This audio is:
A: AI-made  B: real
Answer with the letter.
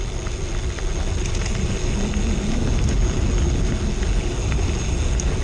B